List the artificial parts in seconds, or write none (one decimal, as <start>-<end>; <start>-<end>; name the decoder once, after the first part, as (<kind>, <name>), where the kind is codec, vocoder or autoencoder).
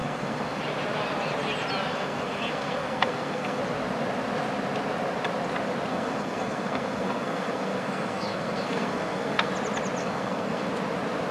0.0-0.6 (codec, SNAC); 1.9-3.6; 5.9-9.5; 10.0-10.7